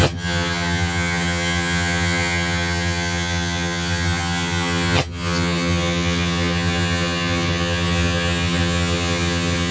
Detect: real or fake fake